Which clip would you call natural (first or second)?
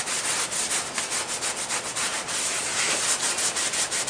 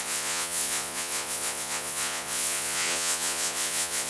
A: first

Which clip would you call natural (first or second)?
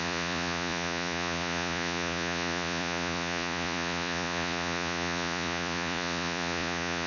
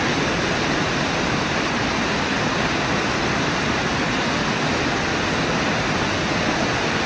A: second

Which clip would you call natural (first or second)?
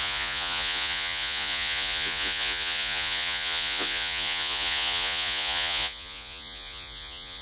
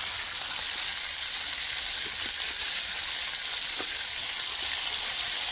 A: second